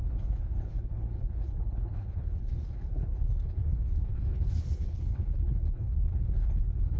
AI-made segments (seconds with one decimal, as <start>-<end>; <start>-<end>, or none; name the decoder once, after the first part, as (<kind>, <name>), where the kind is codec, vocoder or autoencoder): 0.0-7.0 (codec, HILCodec)